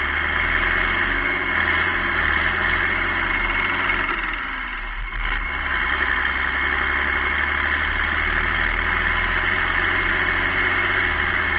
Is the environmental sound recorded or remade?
recorded